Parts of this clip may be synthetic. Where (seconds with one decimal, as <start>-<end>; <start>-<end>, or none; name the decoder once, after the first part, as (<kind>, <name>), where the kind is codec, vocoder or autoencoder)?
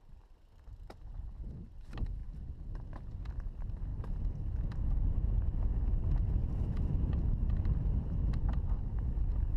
none